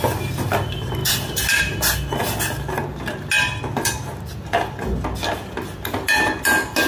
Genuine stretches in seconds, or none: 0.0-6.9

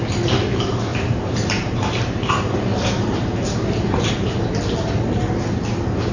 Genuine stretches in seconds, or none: 0.0-0.9; 4.6-6.1